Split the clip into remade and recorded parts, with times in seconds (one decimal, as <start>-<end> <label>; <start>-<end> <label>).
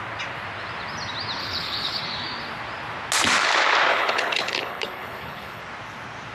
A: 0.0-1.4 recorded; 1.4-2.0 remade; 2.0-3.9 recorded; 3.9-5.6 remade; 5.6-6.3 recorded